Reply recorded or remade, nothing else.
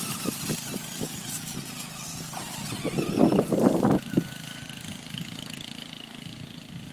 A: recorded